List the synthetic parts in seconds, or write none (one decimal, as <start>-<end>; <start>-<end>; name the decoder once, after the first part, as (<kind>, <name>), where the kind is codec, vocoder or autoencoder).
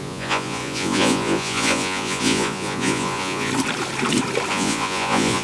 0.0-3.5 (vocoder, Vocos); 4.5-5.4